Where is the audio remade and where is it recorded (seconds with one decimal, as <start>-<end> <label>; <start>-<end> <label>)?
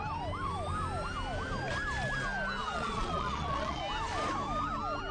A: 0.0-2.6 recorded; 2.6-3.8 remade; 3.8-5.1 recorded